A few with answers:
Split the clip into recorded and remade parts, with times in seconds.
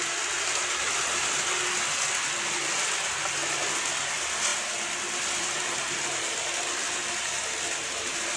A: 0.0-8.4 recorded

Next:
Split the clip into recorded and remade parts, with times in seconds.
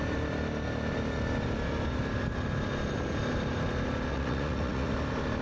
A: 0.0-4.1 recorded; 4.1-4.9 remade; 4.9-5.4 recorded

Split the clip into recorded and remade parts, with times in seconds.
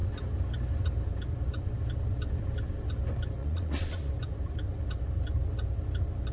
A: 0.0-3.4 recorded; 3.4-4.1 remade; 4.1-6.3 recorded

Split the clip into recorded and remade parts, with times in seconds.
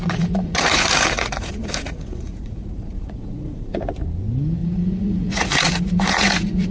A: 0.0-3.9 remade; 3.9-4.6 recorded; 4.6-6.7 remade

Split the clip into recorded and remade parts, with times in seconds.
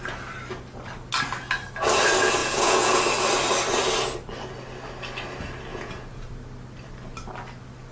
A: 0.0-2.4 recorded; 2.4-3.0 remade; 3.0-5.7 recorded; 5.7-6.3 remade; 6.3-7.9 recorded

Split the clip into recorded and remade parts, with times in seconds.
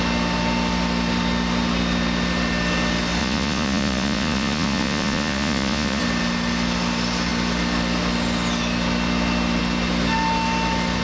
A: 0.0-3.2 recorded; 3.2-6.0 remade; 6.0-11.0 recorded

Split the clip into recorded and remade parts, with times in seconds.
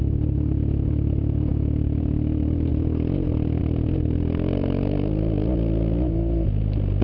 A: 0.0-7.0 recorded